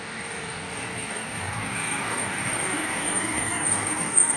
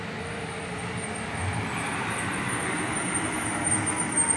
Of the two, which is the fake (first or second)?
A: first